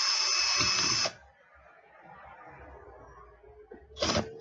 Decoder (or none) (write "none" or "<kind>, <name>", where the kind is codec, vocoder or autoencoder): none